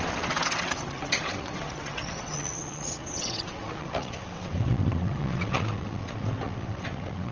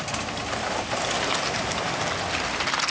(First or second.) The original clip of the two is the second